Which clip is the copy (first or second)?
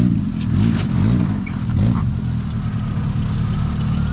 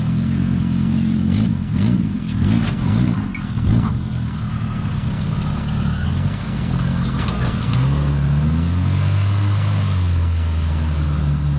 second